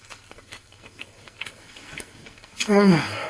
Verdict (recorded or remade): remade